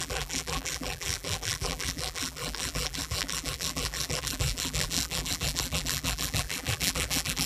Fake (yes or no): yes